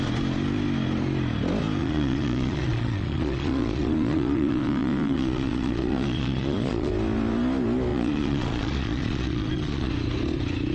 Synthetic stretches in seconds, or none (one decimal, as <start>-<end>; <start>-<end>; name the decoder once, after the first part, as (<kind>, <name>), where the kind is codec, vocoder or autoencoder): 1.8-6.9 (vocoder, Vocos); 7.9-9.9